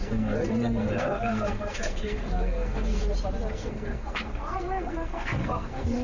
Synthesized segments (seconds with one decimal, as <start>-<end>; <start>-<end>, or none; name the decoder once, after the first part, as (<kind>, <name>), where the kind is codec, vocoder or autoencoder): 0.0-3.0 (codec, SNAC); 3.5-6.0